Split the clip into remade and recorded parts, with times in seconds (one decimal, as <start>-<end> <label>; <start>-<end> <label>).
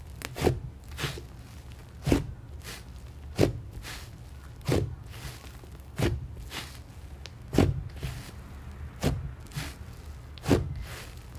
0.0-11.4 recorded